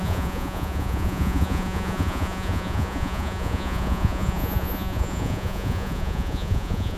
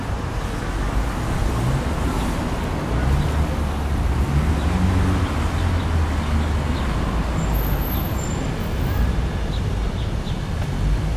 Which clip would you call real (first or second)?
second